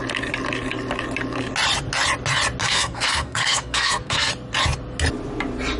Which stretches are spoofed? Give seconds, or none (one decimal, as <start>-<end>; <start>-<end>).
2.6-4.3